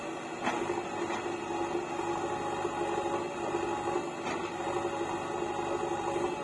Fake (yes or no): no